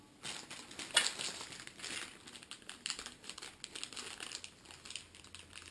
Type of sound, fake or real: real